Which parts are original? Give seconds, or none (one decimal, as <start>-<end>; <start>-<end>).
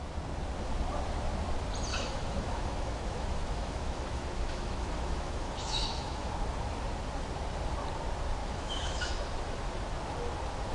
0.0-1.9; 6.3-8.4; 9.1-10.7